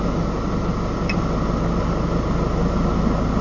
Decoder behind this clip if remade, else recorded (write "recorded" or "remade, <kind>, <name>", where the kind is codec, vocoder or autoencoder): recorded